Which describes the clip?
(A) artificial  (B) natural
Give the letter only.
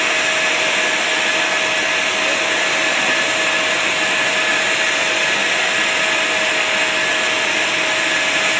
B